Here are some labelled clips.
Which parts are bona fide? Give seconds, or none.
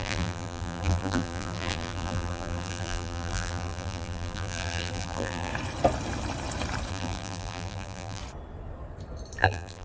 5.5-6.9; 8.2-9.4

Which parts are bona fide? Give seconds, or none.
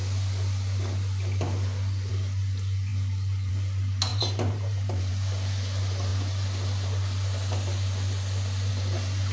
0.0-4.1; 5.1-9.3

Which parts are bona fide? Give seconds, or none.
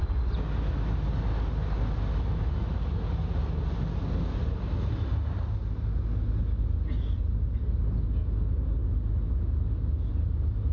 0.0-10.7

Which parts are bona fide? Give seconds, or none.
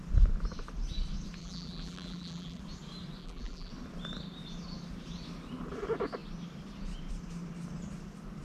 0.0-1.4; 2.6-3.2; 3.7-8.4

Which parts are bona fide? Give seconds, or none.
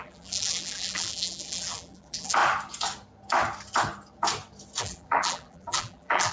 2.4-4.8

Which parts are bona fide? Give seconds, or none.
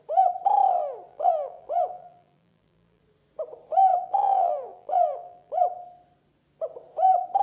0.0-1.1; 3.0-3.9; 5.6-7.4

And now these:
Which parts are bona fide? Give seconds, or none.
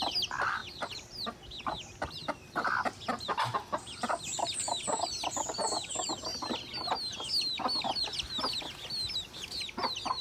0.0-0.6; 1.1-2.2; 2.8-10.2